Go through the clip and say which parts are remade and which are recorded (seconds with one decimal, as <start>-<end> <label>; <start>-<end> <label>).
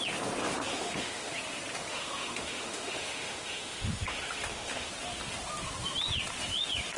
0.0-0.7 recorded; 0.7-1.3 remade; 1.3-1.9 recorded; 1.9-4.9 remade; 4.9-7.0 recorded